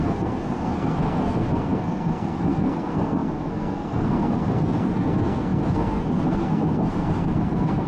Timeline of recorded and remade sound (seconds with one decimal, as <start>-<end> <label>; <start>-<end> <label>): 0.0-7.9 remade